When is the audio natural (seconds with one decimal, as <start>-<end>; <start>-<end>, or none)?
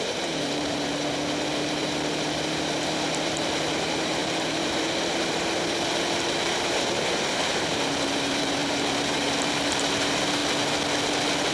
10.4-11.5